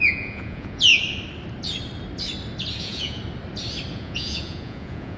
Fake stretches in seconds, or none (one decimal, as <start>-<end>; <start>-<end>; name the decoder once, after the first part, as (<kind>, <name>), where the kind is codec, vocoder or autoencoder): 0.0-0.9 (vocoder, Vocos); 2.8-3.2; 3.9-5.2